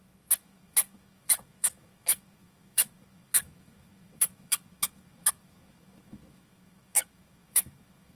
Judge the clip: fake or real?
fake